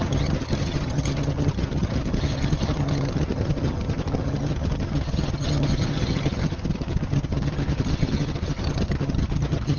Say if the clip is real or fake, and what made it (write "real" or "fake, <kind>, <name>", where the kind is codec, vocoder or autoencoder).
fake, vocoder, HiFi-GAN